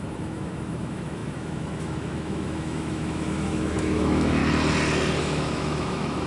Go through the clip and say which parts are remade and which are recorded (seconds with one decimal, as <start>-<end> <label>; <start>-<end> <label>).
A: 0.0-4.4 remade; 4.4-5.2 recorded; 5.2-6.3 remade